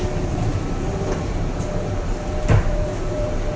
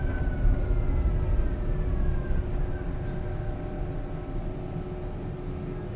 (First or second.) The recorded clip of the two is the second